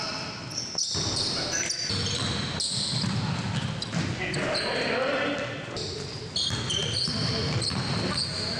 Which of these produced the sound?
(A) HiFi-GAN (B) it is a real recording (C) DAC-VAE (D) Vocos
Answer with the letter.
B